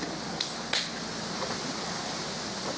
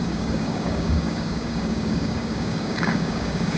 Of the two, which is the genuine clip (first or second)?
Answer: first